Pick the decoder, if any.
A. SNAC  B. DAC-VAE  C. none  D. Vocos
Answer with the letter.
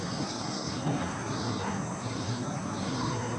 A